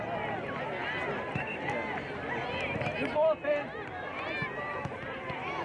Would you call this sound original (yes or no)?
yes